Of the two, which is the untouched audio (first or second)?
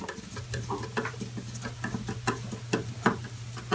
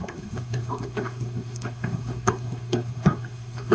first